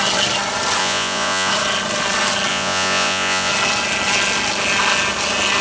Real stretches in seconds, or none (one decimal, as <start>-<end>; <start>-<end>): 0.0-0.8; 1.5-2.5; 3.5-5.6